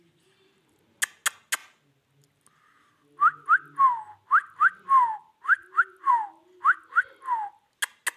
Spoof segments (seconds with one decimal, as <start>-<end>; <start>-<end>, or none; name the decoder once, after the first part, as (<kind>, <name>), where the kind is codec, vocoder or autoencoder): none